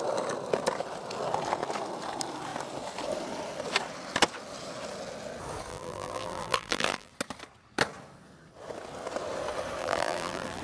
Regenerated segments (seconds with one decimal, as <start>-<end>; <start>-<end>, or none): 5.7-7.1; 9.8-10.6